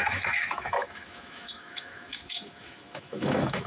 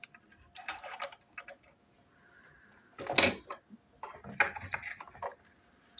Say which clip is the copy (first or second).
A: first